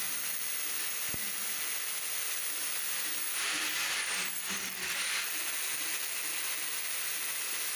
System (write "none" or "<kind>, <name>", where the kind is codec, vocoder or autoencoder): none